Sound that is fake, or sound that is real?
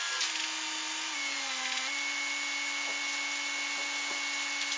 real